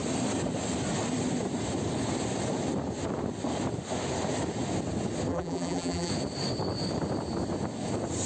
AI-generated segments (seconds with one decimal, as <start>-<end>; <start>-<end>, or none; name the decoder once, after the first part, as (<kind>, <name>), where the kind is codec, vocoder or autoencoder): 5.3-6.1 (vocoder, BigVGAN v2)